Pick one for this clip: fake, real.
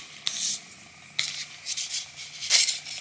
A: real